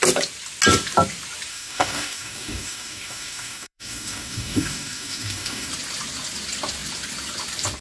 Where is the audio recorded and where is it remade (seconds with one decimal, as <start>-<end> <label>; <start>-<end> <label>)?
0.0-1.5 recorded; 1.5-5.7 remade; 5.7-7.8 recorded